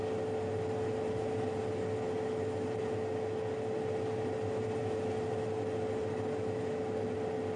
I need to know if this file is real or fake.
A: real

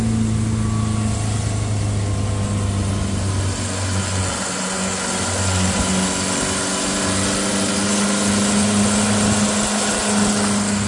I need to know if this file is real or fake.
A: real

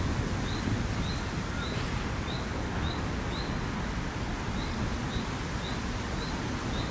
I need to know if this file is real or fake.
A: real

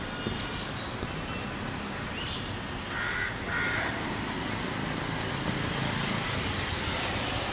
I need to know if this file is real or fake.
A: real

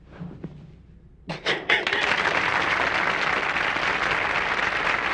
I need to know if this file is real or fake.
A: real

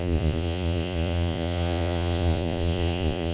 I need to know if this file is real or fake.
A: fake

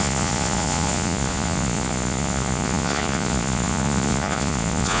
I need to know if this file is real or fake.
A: fake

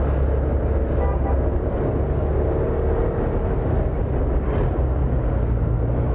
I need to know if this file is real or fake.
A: real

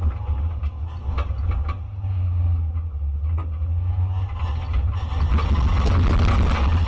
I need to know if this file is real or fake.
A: real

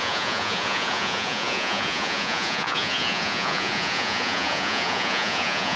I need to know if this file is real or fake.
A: fake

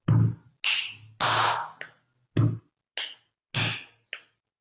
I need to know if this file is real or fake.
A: real